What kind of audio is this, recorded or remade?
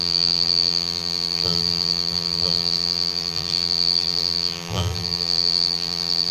remade